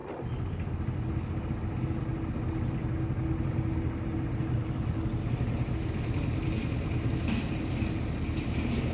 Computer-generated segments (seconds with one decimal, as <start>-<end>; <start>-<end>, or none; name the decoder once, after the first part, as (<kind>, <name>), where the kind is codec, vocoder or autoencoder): none

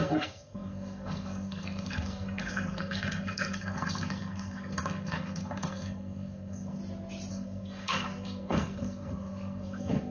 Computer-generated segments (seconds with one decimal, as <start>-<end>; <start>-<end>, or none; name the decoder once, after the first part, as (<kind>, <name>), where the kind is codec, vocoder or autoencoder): 0.0-6.8 (codec, SNAC); 7.3-10.1

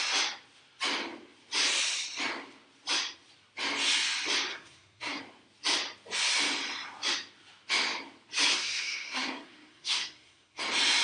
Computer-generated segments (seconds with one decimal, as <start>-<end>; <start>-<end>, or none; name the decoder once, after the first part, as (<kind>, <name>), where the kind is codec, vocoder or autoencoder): 4.5-5.2 (codec, SNAC); 8.5-10.6

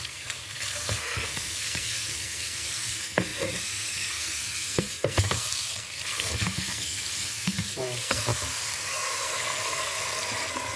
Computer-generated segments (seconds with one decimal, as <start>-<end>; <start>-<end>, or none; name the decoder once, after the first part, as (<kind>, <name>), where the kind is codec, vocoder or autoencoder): 0.0-10.8 (codec, SNAC)

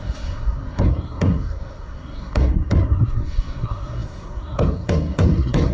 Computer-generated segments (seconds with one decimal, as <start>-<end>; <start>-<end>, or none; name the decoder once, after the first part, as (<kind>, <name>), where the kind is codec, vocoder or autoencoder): 0.0-5.7 (codec, SNAC)

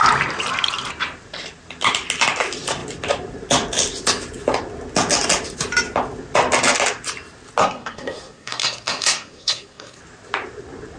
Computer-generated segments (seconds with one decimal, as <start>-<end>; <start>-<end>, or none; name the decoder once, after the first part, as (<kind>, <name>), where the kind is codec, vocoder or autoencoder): 7.6-10.0 (codec, SNAC)

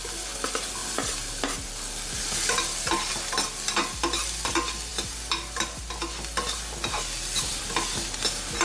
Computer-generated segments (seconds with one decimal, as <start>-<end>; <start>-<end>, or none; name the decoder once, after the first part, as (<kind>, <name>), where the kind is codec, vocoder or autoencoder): none